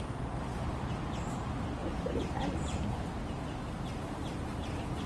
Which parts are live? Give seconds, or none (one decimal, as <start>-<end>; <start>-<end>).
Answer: 0.0-1.8

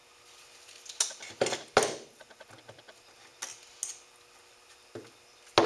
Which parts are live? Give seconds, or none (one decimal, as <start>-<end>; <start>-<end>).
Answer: 0.0-5.7

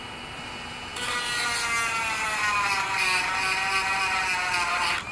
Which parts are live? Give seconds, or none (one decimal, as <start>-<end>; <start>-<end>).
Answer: 0.0-5.1

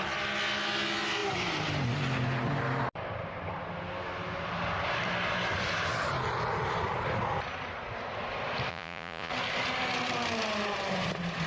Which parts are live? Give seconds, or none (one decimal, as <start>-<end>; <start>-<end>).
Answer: 0.0-8.7; 9.3-11.5

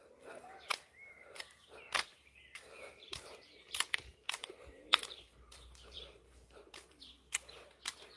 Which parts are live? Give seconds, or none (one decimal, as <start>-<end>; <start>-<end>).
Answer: 0.0-0.7; 1.4-2.1; 7.0-8.2

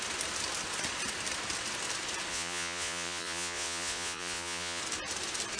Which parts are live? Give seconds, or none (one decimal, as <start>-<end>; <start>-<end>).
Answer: 0.0-2.3; 4.8-5.6